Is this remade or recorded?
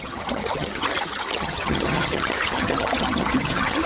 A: remade